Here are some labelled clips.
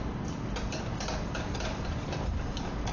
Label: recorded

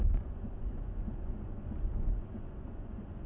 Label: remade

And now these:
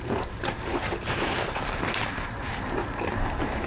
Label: remade